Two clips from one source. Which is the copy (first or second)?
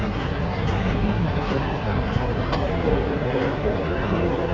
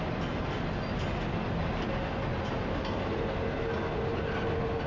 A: first